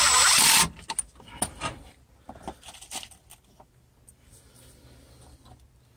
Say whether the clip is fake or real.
real